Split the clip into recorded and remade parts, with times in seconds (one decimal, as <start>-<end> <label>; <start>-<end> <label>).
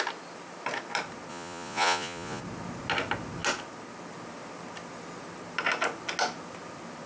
0.0-1.3 recorded; 1.3-2.4 remade; 2.4-7.1 recorded